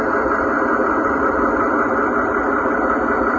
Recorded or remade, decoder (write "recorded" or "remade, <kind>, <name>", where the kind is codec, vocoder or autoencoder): recorded